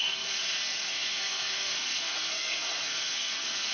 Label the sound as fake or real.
fake